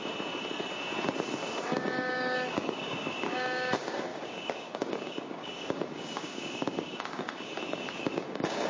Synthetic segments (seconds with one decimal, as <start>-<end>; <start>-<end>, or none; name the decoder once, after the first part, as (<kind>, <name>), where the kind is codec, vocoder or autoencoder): 1.6-8.7 (codec, DAC)